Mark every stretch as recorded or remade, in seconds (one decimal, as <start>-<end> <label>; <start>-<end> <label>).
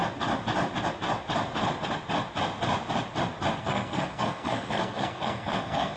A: 0.0-3.6 recorded; 3.6-6.0 remade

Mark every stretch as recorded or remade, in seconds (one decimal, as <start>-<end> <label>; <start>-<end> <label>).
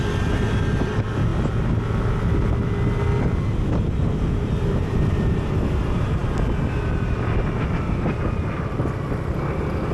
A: 0.0-9.9 recorded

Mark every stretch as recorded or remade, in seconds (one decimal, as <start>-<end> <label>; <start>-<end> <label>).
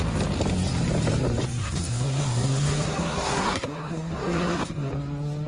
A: 0.0-1.6 recorded; 1.6-4.9 remade; 4.9-5.5 recorded